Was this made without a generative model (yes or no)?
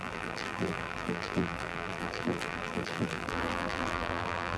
no